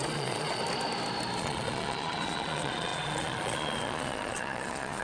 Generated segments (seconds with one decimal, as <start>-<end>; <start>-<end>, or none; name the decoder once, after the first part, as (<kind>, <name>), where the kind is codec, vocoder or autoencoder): 0.0-0.6 (vocoder, Vocos); 1.4-5.0